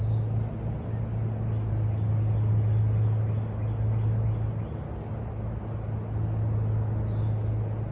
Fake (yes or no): no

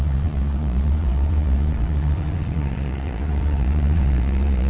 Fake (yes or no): yes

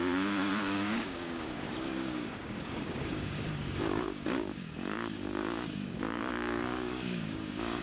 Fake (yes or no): yes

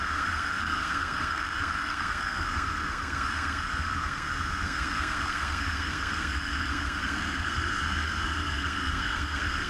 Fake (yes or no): yes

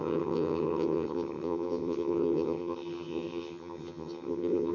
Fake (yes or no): yes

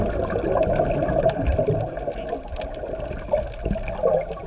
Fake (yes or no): no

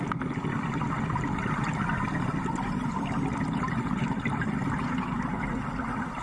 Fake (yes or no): no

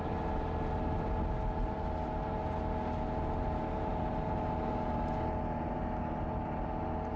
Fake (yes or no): no